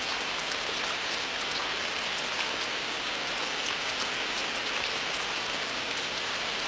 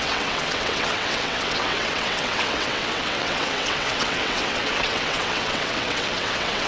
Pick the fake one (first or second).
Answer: second